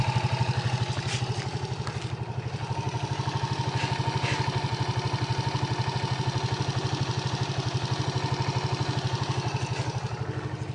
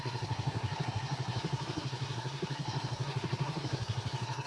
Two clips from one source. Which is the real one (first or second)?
first